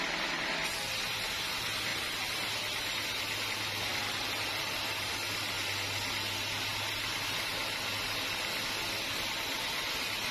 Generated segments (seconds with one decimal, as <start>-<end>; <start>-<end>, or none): 3.9-5.4